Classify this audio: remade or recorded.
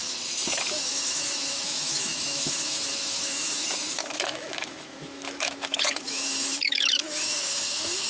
remade